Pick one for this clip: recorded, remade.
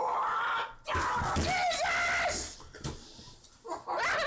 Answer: recorded